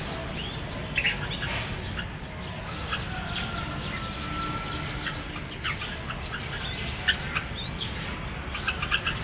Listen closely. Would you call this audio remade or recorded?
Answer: recorded